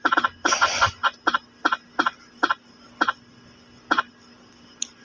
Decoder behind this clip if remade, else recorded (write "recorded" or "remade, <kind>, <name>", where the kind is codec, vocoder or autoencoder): recorded